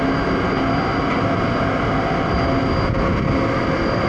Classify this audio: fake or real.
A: real